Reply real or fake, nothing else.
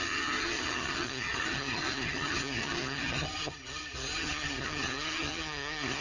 fake